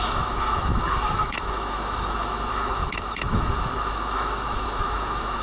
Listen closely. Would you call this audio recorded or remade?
remade